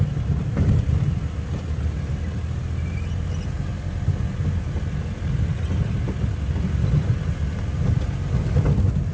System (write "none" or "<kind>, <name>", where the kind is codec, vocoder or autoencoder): none